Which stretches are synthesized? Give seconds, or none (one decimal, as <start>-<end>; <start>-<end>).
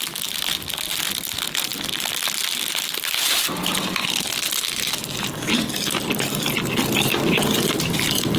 none